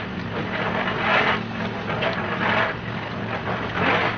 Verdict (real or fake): real